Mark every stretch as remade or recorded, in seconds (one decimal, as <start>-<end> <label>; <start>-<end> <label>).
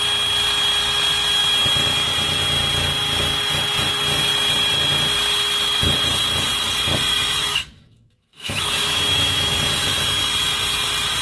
0.0-7.4 recorded; 7.4-9.5 remade; 9.5-11.2 recorded